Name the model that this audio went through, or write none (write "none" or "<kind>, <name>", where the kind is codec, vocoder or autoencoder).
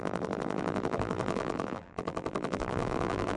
vocoder, BigVGAN v2